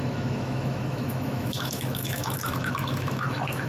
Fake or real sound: fake